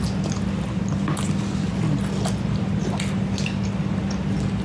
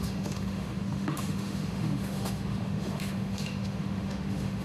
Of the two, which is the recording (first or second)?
first